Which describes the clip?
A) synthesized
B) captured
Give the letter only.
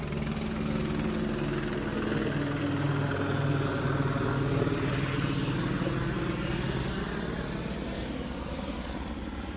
B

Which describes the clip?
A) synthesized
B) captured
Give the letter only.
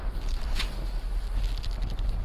B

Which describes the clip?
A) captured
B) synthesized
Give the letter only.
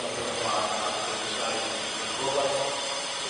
B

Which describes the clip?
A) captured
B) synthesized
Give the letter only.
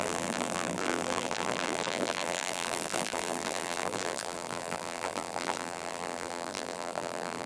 B